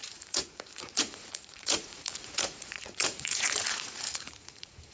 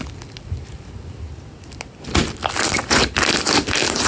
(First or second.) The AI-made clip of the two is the first